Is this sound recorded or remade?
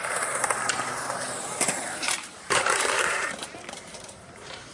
remade